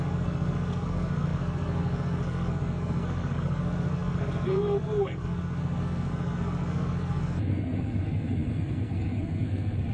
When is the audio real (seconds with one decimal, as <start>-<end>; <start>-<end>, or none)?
none